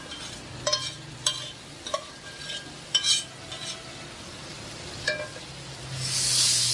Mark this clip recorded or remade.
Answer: recorded